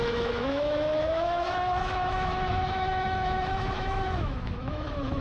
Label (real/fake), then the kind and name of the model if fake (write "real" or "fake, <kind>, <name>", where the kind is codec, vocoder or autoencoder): fake, autoencoder, DAC-VAE